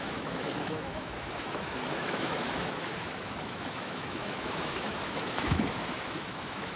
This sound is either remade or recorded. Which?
remade